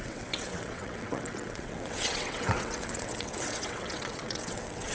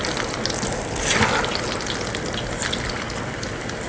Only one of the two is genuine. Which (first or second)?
second